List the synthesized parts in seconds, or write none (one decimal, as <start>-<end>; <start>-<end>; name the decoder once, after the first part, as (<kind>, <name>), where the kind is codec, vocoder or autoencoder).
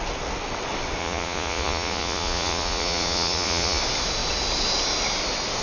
1.0-3.8 (vocoder, Vocos)